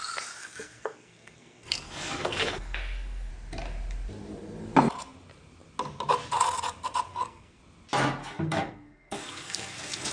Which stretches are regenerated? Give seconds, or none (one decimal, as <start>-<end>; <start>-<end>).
0.4-3.3; 7.1-7.6; 8.2-10.1